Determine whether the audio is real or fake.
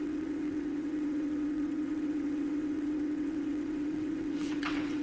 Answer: fake